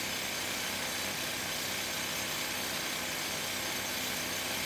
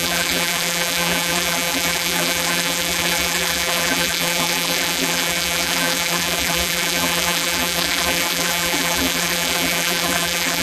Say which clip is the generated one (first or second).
second